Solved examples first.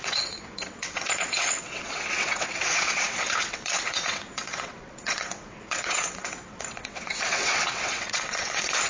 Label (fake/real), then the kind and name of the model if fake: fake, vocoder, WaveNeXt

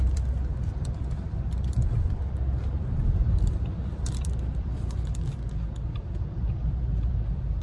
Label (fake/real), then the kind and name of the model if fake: fake, vocoder, BigVGAN v2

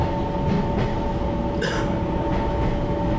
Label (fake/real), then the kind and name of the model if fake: real